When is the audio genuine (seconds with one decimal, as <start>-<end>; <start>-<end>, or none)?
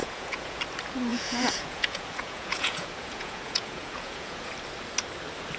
0.6-1.1; 4.5-5.6